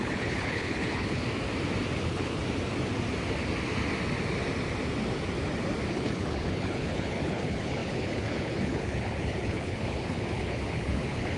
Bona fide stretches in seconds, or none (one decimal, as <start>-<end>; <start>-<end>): 1.2-2.0; 2.4-5.9